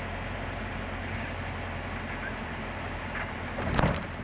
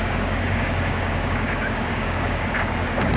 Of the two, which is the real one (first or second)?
first